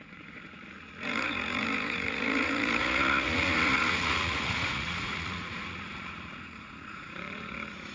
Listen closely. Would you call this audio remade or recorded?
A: remade